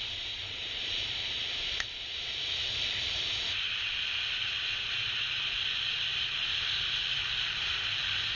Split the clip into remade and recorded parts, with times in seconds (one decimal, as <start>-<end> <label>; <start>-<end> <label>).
0.0-0.8 recorded; 0.8-4.9 remade; 4.9-8.4 recorded